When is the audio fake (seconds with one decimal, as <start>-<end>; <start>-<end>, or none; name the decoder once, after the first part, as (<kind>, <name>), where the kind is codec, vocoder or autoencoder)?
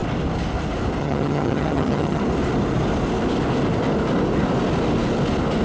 1.0-2.2 (vocoder, HiFi-GAN)